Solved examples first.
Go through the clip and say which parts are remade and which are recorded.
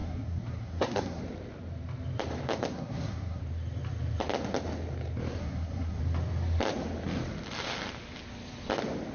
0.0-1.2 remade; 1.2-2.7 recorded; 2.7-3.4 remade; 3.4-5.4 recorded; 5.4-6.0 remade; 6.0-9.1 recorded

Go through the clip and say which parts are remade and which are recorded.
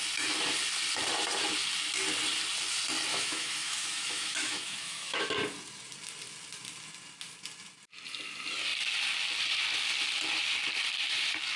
0.0-3.1 recorded; 3.1-5.3 remade; 5.3-11.6 recorded